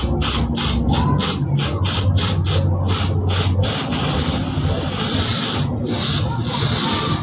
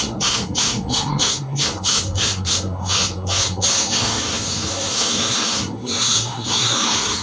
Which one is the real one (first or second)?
first